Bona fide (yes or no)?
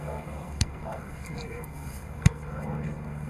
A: no